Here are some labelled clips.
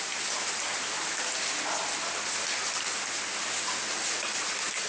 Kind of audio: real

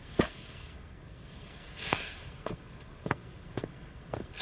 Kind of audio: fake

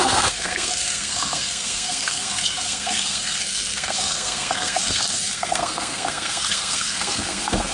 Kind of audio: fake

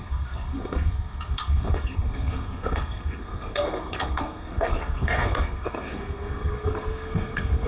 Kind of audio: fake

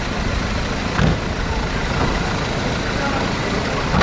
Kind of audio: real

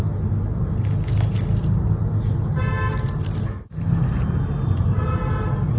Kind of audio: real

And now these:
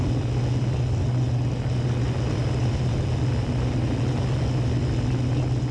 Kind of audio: real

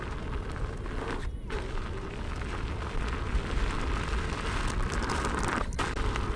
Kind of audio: real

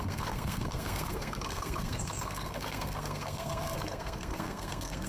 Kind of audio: fake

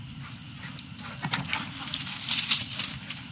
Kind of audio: real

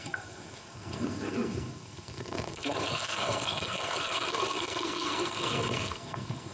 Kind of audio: fake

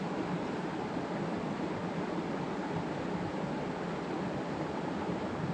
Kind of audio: real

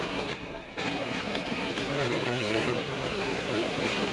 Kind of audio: fake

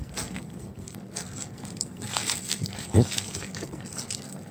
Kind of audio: fake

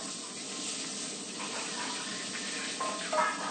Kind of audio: real